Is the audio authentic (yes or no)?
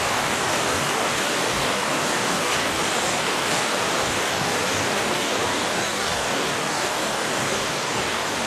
no